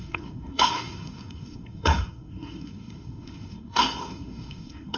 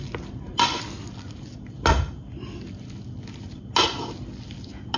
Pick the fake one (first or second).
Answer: first